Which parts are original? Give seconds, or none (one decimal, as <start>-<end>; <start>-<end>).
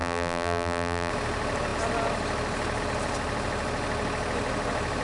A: 1.1-5.0